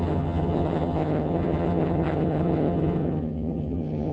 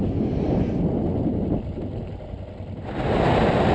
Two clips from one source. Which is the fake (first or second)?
first